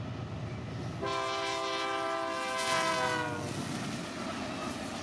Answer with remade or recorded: recorded